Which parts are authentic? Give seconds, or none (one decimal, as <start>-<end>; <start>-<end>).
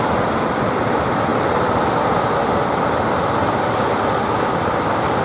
0.0-5.2